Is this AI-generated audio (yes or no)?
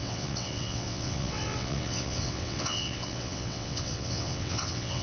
yes